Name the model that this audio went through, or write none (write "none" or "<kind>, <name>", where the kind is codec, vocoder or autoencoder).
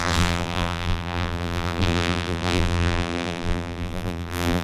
vocoder, BigVGAN v2